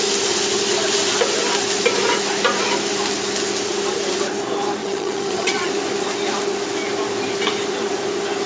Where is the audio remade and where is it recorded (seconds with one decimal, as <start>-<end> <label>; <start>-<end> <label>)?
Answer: 0.0-4.8 recorded; 4.8-5.7 remade; 5.7-8.5 recorded